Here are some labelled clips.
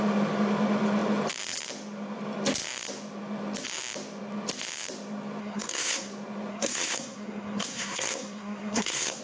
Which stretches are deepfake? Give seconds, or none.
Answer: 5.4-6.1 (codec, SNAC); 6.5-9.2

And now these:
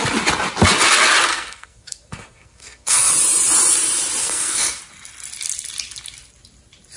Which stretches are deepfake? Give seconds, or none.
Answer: 1.3-3.1 (codec, SNAC); 4.2-4.8

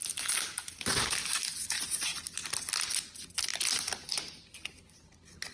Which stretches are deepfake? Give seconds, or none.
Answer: none

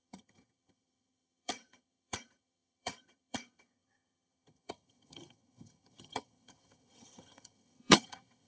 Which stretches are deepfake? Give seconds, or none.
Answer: 0.0-8.5 (vocoder, HiFi-GAN)

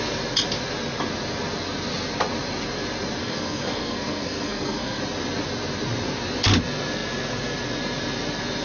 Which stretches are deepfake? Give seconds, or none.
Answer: 3.2-5.0 (codec, SNAC)